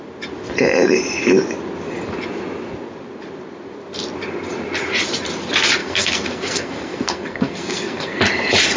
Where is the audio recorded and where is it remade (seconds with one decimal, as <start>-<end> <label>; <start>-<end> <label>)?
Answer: 0.0-5.8 recorded; 5.8-8.2 remade; 8.2-8.8 recorded